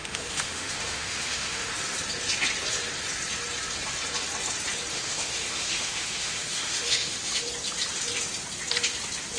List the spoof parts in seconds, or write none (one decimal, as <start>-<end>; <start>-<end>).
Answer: 0.0-1.7; 4.9-7.4